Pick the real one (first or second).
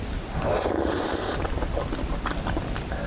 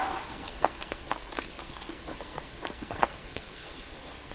first